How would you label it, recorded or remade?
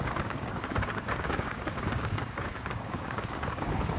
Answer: remade